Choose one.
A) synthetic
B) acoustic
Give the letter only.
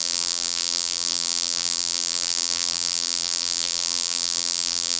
A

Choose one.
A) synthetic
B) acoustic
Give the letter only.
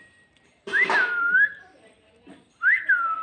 A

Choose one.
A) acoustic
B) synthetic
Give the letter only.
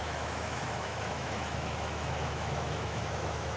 B